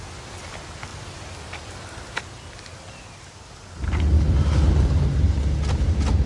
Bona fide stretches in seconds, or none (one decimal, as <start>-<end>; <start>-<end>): 0.0-6.3